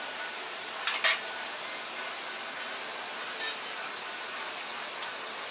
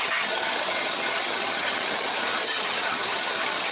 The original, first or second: first